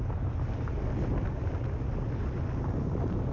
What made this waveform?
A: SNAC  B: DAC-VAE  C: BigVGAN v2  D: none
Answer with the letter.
D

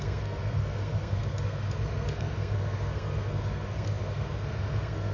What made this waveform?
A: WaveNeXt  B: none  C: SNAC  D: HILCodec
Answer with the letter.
C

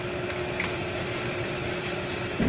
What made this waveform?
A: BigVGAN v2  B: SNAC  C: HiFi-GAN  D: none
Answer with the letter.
D